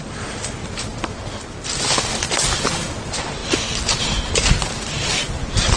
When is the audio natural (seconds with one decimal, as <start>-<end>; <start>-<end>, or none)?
0.0-3.4; 5.0-5.8